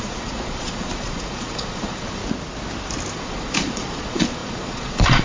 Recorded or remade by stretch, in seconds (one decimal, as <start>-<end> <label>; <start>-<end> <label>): 0.0-2.2 remade; 2.2-3.1 recorded; 3.1-5.2 remade